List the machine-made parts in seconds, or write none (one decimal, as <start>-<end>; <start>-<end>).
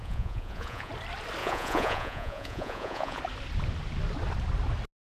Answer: 0.0-0.9; 1.4-3.2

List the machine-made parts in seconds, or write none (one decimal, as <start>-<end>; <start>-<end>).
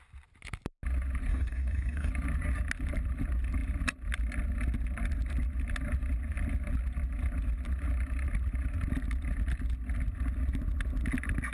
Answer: 1.3-2.1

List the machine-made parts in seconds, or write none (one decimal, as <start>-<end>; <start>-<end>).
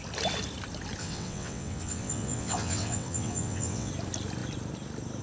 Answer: 1.0-3.9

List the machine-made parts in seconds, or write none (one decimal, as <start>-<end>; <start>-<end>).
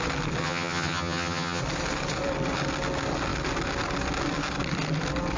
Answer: 0.4-1.6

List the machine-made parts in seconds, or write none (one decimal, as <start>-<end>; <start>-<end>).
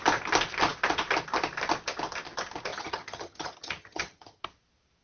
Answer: 2.7-4.4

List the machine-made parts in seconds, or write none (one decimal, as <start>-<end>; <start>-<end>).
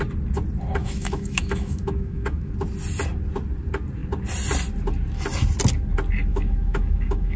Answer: 0.8-2.5; 6.3-7.4